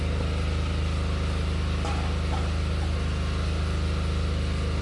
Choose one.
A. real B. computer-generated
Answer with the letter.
A